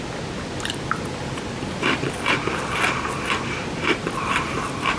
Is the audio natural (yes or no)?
yes